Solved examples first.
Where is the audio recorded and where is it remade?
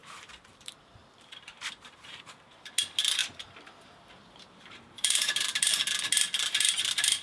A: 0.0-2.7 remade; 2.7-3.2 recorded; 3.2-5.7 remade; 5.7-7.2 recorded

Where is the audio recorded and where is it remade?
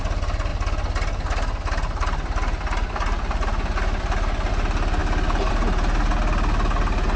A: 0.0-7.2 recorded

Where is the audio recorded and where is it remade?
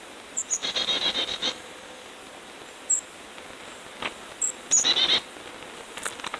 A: 0.0-0.6 recorded; 0.6-2.1 remade; 2.1-6.4 recorded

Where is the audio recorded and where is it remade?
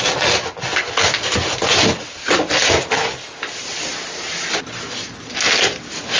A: 0.0-3.9 recorded; 3.9-4.5 remade; 4.5-6.2 recorded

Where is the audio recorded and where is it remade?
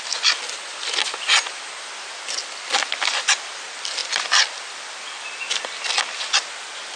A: 0.0-4.0 recorded; 4.0-4.5 remade; 4.5-7.0 recorded